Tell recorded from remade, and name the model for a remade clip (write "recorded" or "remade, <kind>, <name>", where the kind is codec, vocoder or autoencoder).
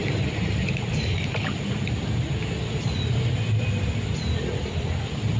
recorded